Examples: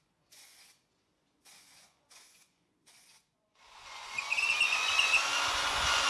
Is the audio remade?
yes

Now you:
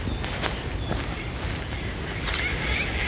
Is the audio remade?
no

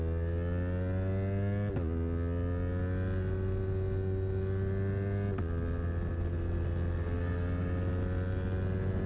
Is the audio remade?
no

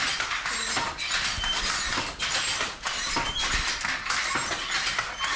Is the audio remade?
no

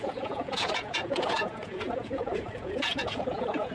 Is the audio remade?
yes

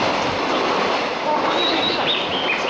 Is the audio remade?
no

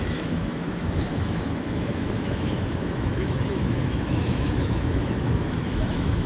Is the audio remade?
yes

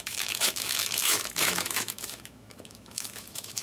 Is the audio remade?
yes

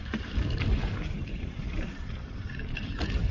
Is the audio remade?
yes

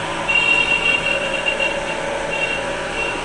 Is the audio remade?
no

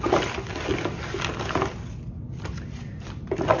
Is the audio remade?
no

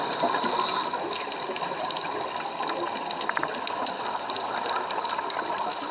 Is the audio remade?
no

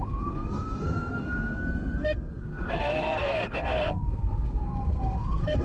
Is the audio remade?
yes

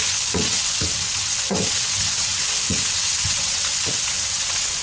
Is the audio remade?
yes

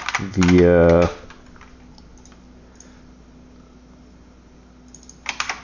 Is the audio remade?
no